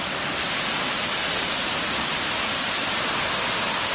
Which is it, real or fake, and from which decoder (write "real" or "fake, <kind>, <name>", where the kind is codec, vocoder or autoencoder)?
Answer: real